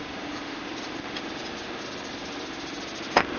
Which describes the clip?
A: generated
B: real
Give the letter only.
B